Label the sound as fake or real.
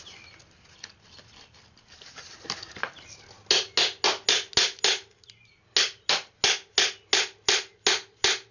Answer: real